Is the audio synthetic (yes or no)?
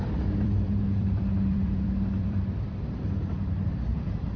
yes